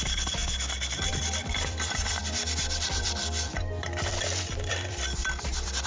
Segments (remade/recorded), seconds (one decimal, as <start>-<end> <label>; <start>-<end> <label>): 0.0-0.4 remade; 0.4-1.1 recorded; 1.1-2.2 remade; 2.2-2.9 recorded; 2.9-5.9 remade